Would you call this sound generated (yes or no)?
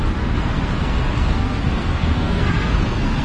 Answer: yes